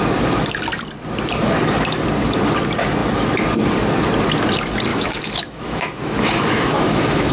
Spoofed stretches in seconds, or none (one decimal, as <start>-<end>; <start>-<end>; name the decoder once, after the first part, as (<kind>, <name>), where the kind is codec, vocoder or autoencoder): 4.9-7.3 (autoencoder, DAC-VAE)